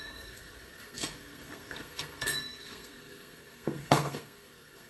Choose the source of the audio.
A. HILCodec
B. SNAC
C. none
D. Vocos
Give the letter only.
B